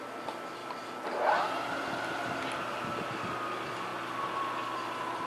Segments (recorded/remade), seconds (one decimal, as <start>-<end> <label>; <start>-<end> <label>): 0.0-5.3 recorded